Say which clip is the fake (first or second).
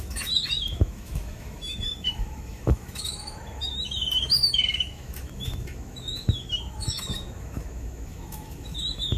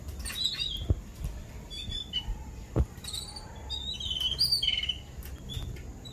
first